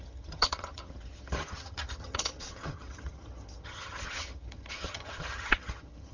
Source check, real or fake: fake